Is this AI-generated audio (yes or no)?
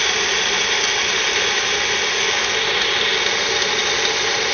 no